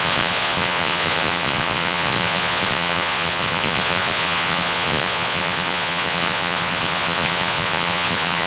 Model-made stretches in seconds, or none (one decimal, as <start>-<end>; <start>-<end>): 0.0-8.5